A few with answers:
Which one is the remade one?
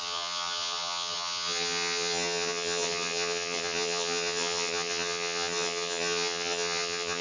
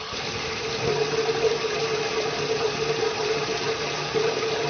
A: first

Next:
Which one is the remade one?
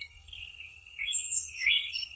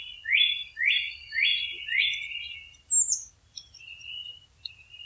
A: first